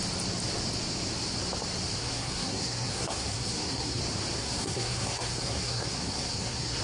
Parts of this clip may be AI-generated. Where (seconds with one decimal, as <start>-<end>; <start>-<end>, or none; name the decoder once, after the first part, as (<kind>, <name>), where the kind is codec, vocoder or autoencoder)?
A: 2.0-4.0 (codec, SNAC); 4.4-6.8